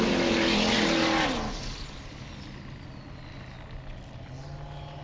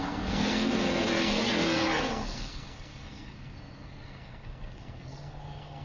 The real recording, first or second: first